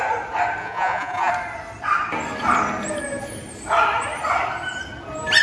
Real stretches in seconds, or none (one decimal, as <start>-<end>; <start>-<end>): 0.0-0.6; 1.3-5.4